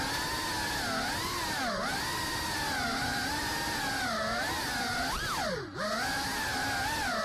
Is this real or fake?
real